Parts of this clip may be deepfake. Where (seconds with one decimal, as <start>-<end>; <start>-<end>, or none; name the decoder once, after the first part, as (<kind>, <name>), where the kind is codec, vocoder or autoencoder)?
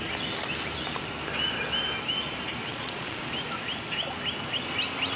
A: 2.6-3.2 (vocoder, Vocos)